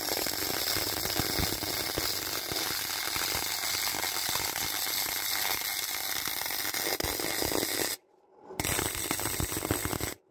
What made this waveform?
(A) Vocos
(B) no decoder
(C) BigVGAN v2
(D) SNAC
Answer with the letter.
B